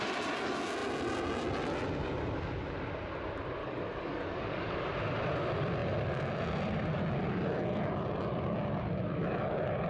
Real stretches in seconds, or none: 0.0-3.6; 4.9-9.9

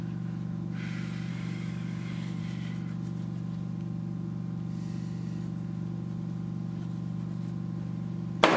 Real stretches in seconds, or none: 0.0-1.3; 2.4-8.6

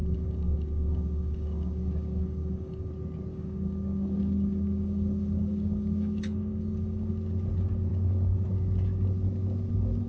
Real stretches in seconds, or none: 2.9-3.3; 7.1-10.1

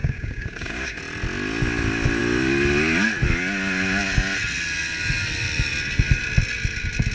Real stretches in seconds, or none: 1.0-7.1

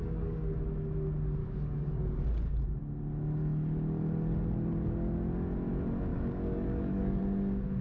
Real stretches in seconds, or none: 0.5-1.4; 2.2-6.1; 7.2-7.8